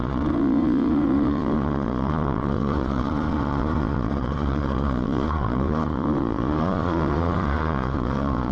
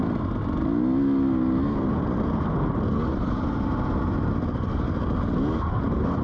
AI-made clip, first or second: first